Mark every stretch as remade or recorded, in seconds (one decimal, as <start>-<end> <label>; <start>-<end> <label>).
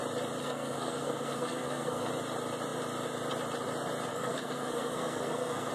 0.0-0.4 recorded; 0.4-2.1 remade; 2.1-4.1 recorded; 4.1-5.7 remade